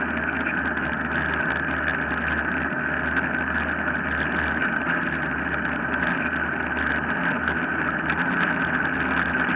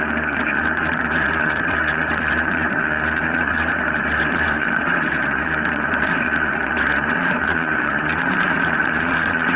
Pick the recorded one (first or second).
first